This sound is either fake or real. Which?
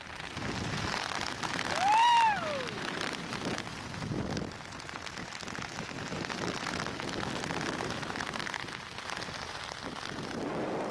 real